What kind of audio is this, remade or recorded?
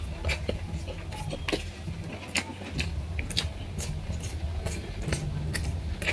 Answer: recorded